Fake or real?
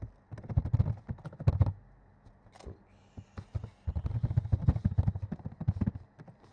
real